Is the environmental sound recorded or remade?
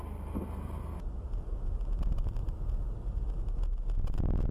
recorded